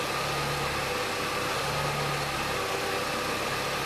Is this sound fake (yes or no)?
no